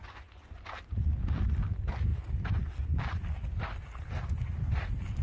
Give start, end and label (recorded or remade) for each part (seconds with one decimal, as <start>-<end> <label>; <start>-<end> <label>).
0.0-0.7 remade; 0.7-5.2 recorded